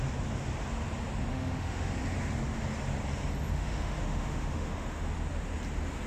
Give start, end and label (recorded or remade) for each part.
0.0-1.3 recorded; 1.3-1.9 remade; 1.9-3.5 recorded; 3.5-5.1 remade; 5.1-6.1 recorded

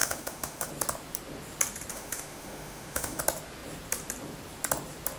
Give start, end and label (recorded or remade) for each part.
0.0-0.7 remade; 0.7-1.9 recorded; 1.9-3.2 remade; 3.2-5.2 recorded

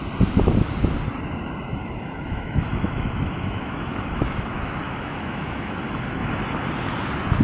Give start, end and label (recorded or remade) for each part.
0.0-1.8 recorded; 1.8-5.8 remade; 5.8-7.4 recorded

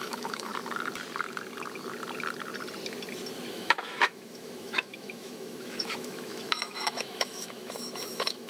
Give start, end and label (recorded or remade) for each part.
0.0-0.5 remade; 0.5-3.5 recorded; 3.5-8.5 remade

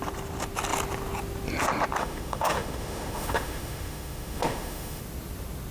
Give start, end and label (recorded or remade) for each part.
0.0-2.0 recorded; 2.0-5.0 remade; 5.0-5.7 recorded

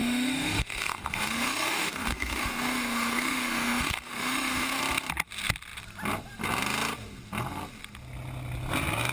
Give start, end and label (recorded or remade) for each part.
0.0-4.8 remade; 4.8-9.1 recorded